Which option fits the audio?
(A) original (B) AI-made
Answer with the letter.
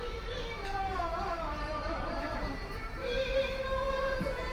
B